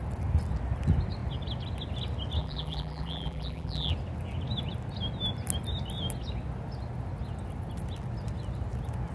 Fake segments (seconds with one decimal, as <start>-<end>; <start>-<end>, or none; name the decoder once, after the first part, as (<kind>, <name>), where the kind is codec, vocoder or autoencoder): 2.4-3.9 (vocoder, BigVGAN v2)